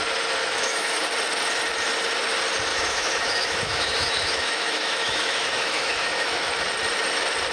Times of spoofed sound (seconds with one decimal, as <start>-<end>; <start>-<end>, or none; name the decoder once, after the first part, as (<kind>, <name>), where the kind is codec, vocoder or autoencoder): 0.4-1.0 (autoencoder, DAC-VAE); 2.7-6.5